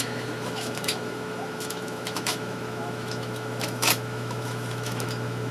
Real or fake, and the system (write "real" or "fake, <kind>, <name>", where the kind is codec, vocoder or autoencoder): fake, autoencoder, DAC-VAE